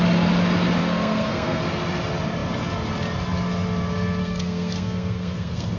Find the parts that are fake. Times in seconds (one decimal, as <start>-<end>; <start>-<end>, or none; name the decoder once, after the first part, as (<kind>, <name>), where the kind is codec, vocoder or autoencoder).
0.8-1.6 (codec, SNAC); 4.2-5.8